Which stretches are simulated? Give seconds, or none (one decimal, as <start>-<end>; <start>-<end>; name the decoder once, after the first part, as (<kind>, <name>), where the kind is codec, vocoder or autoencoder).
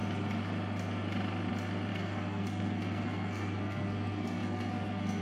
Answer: 1.9-5.2 (codec, SNAC)